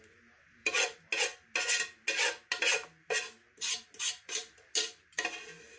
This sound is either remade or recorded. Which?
recorded